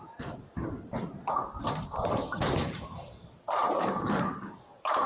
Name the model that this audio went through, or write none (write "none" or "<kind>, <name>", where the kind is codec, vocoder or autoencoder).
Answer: vocoder, BigVGAN v2